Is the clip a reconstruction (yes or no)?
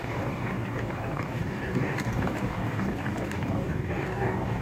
yes